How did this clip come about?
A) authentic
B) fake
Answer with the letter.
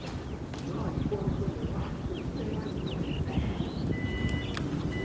A